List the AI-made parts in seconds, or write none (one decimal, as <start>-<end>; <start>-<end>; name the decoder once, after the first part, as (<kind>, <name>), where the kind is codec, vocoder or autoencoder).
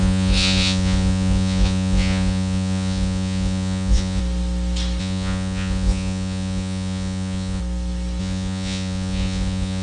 0.0-4.2 (vocoder, Vocos); 5.0-7.6; 8.2-9.8